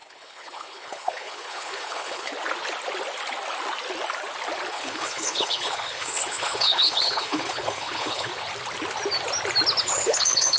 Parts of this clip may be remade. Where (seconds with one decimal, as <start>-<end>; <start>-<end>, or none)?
0.0-2.3; 4.7-8.3; 9.8-10.6